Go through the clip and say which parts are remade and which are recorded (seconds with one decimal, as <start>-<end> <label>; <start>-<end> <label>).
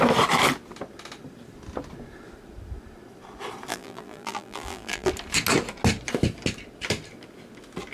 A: 0.0-3.7 recorded; 3.7-5.1 remade; 5.1-7.9 recorded